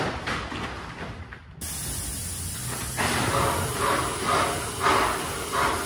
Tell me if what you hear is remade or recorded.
recorded